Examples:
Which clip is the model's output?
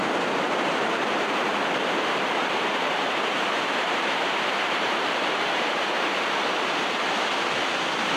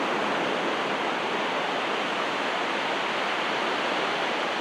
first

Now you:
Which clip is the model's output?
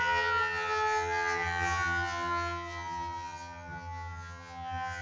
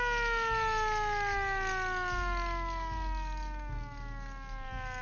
first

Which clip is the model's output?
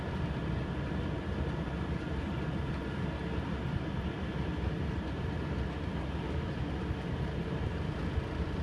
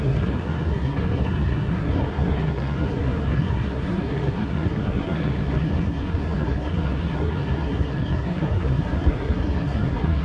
second